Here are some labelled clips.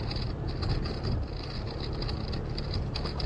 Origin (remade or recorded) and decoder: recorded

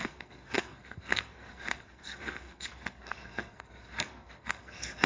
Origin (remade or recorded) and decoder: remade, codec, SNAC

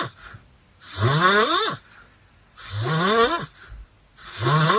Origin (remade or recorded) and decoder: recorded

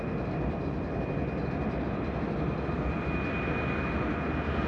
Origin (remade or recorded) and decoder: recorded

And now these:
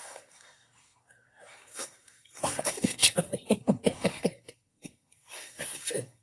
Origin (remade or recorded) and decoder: remade, codec, SNAC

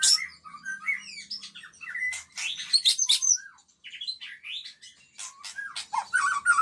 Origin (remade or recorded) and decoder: recorded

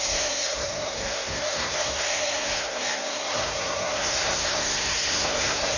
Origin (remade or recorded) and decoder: remade, codec, SNAC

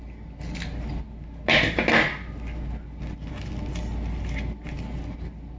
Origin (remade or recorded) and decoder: recorded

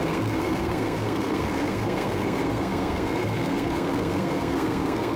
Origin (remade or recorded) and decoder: remade, codec, SNAC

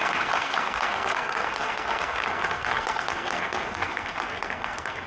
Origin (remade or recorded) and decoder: remade, codec, SNAC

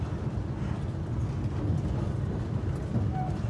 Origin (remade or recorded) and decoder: recorded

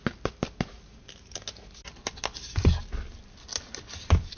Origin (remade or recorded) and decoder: recorded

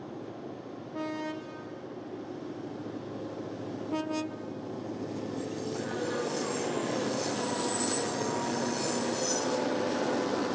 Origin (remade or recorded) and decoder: recorded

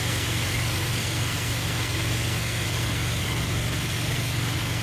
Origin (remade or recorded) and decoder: remade, codec, SNAC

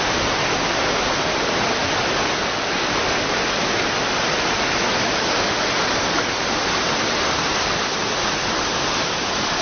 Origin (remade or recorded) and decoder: recorded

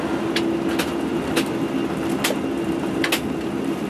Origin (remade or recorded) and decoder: recorded